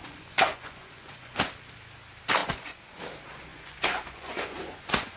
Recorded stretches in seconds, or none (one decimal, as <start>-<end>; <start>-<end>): 1.5-2.4; 3.0-3.5